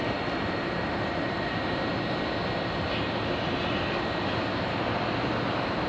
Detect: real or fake real